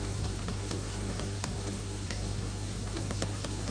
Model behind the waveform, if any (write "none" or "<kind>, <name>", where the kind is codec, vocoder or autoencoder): codec, SNAC